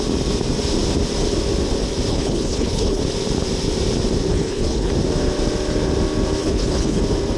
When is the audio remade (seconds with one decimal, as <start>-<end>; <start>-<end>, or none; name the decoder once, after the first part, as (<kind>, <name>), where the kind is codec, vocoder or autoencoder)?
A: 2.1-3.0 (codec, HILCodec); 4.3-4.9; 6.4-7.0

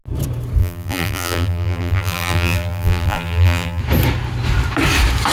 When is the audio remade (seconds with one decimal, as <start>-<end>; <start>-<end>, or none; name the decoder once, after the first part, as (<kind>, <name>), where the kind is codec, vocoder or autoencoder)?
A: 0.6-3.8 (vocoder, BigVGAN v2)

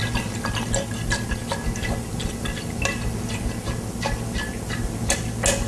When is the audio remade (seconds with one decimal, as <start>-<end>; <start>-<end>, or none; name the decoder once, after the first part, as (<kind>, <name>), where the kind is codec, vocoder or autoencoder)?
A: none

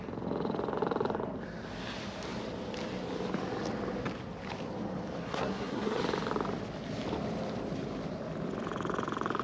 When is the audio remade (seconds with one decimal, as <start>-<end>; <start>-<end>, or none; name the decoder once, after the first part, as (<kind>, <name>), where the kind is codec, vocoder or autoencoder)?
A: 5.2-6.0 (codec, SNAC)

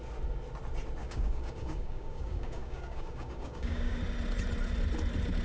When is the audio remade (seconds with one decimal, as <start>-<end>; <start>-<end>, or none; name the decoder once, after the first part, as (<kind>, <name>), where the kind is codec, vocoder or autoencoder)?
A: 1.0-4.0 (codec, DAC)

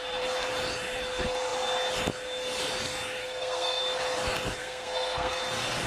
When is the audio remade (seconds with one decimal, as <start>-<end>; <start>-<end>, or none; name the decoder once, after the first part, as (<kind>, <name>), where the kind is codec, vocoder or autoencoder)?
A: 3.2-3.8 (codec, SNAC); 4.6-5.4

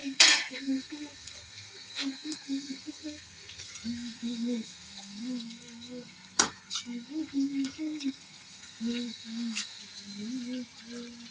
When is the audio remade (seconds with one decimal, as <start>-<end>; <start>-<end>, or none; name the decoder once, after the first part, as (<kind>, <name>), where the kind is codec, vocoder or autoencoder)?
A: 0.0-9.8 (codec, SNAC)